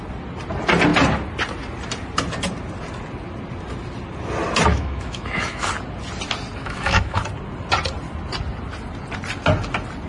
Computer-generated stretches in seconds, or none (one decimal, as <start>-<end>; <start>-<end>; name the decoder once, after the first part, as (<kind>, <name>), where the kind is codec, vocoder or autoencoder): 4.7-5.7 (autoencoder, DAC-VAE); 6.6-7.2